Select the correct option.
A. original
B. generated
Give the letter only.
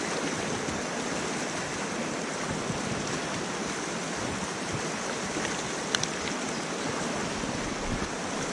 A